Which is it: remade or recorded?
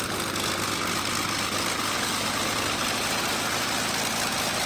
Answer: recorded